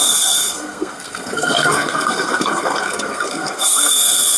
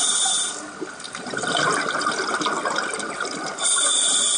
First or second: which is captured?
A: second